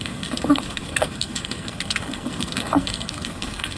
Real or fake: fake